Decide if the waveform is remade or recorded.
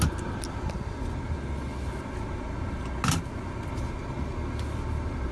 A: recorded